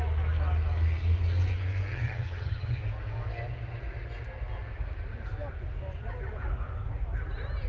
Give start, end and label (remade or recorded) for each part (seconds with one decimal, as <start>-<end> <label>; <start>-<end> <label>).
0.0-1.9 recorded; 1.9-2.8 remade; 2.8-7.7 recorded